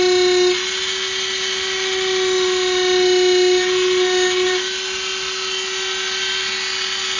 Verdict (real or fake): real